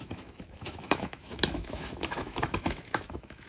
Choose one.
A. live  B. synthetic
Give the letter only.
B